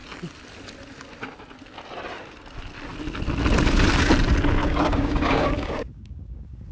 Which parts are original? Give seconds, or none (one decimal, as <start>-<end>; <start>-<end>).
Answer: 0.0-4.6